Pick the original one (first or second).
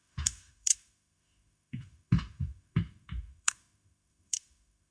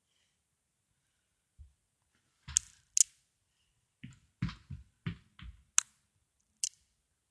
second